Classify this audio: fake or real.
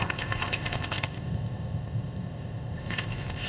fake